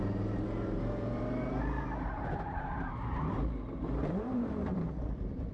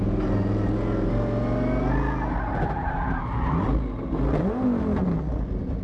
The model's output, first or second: first